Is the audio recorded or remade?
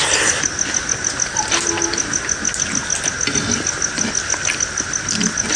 recorded